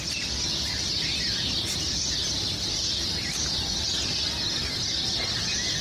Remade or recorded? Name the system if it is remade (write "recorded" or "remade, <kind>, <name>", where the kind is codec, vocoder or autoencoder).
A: recorded